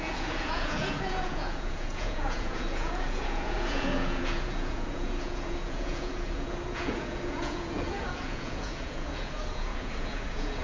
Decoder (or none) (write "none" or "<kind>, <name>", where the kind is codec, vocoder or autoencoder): vocoder, Vocos